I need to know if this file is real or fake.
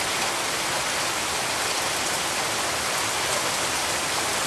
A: real